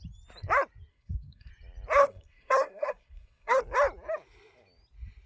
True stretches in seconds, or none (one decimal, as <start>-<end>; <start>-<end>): 0.0-0.9; 1.5-2.0; 3.6-5.3